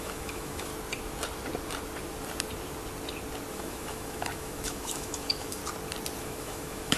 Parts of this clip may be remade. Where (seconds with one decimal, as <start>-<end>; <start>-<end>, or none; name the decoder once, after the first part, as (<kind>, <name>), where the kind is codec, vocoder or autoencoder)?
0.0-0.7 (autoencoder, DAC-VAE); 3.5-5.6; 6.2-7.0